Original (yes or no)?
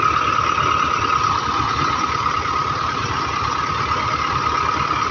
yes